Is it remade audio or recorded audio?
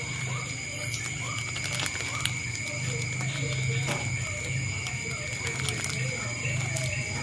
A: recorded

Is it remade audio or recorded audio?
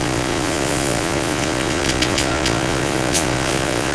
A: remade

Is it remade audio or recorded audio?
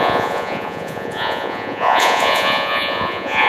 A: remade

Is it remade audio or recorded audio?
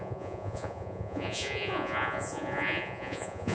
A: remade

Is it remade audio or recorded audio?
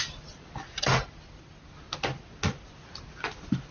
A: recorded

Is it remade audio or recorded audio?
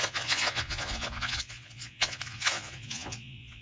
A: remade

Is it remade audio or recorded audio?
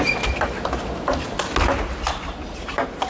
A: recorded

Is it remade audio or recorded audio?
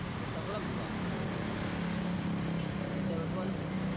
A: recorded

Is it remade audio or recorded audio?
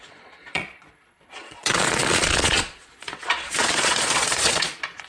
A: remade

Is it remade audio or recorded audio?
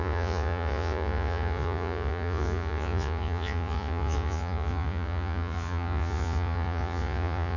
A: remade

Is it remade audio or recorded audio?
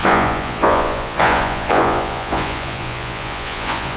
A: remade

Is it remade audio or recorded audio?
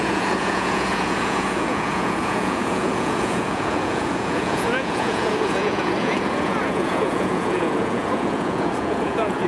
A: remade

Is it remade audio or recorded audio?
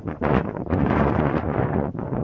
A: remade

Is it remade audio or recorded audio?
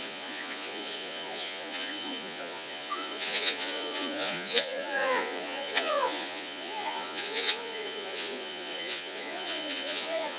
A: remade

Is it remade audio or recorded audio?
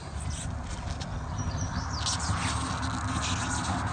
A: recorded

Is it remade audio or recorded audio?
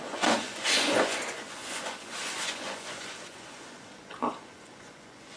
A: remade